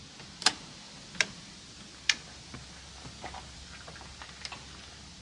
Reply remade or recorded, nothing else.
recorded